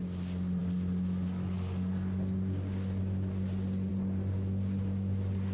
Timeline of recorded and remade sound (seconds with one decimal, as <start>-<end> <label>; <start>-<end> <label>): 0.0-5.5 recorded